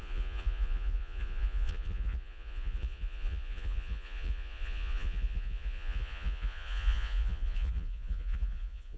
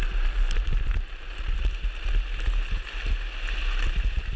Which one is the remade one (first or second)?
first